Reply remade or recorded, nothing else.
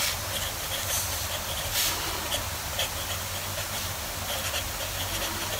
recorded